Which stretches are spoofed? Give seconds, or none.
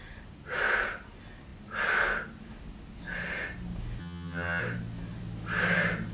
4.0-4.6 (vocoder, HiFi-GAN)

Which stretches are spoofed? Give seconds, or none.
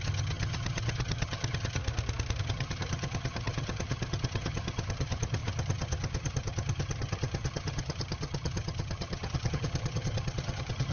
0.0-1.8 (vocoder, HiFi-GAN); 2.4-10.9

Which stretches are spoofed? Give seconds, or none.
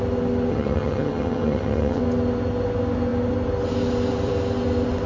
0.5-2.0 (vocoder, HiFi-GAN)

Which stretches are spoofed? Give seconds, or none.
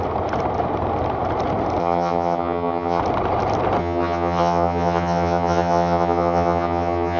1.8-3.0 (vocoder, HiFi-GAN); 3.8-7.2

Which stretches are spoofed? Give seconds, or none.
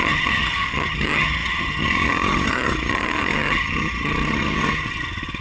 0.0-5.4 (vocoder, HiFi-GAN)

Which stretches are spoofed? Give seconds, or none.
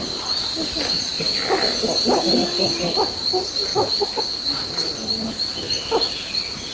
none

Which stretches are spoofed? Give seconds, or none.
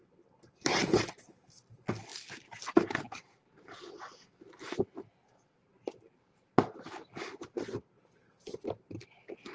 none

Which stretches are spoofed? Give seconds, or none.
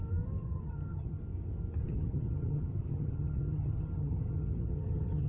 0.4-1.2 (vocoder, HiFi-GAN); 1.8-5.3